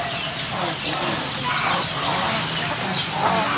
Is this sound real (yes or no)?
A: yes